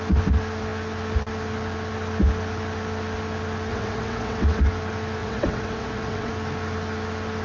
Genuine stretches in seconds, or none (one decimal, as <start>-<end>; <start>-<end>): 0.0-3.7; 4.6-5.2; 6.3-7.4